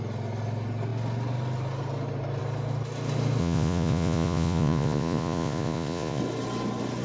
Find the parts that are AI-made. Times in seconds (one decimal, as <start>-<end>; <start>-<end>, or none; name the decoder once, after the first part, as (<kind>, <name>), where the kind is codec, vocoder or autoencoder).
3.4-6.2 (vocoder, Vocos)

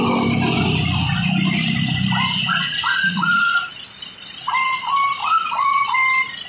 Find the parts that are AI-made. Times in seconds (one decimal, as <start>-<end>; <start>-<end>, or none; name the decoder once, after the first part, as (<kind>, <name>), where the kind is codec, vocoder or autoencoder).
2.5-3.7 (vocoder, Vocos); 5.2-5.9

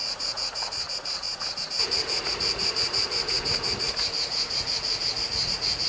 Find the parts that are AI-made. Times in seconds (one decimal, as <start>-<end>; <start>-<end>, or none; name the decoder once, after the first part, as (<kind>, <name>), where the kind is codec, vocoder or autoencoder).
0.0-5.9 (vocoder, Vocos)

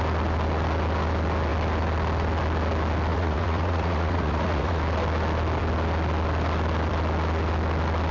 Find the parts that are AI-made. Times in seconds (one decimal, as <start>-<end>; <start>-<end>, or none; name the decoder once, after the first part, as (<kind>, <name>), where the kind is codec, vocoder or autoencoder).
3.1-4.8 (vocoder, Vocos)